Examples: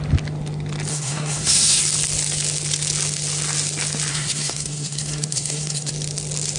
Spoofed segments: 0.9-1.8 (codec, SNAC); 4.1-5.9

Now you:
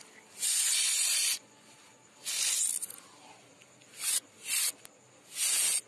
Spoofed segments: 1.2-1.8 (vocoder, Vocos)

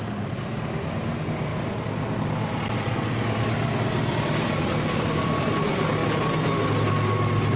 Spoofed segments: none

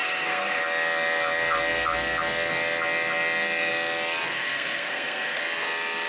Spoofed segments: 0.0-0.6 (codec, SNAC); 4.3-5.4

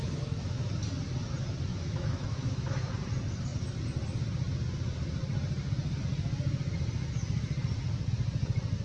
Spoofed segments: 0.0-0.7 (autoencoder, DAC-VAE); 1.7-2.9

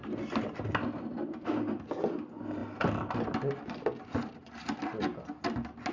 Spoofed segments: none

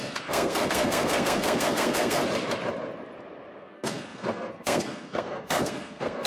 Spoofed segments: 0.0-2.2 (codec, SNAC); 3.6-6.3